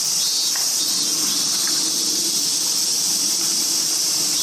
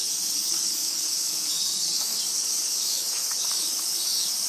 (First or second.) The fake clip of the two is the second